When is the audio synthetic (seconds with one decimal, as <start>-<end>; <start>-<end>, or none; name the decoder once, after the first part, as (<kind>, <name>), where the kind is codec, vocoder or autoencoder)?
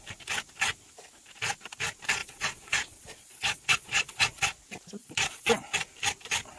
2.2-4.4 (vocoder, Vocos); 5.0-5.7